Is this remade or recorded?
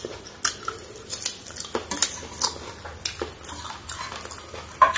recorded